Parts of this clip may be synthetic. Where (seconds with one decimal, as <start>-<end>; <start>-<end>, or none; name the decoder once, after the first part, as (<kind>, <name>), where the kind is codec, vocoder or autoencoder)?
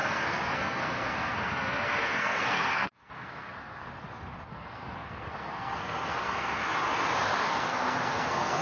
0.0-3.9 (codec, SNAC); 4.5-6.6; 7.5-8.6